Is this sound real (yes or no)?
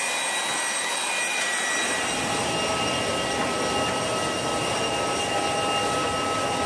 yes